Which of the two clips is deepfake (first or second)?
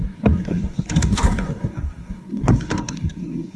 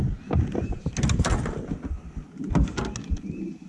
first